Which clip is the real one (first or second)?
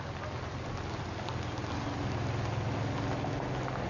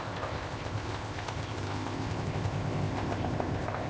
first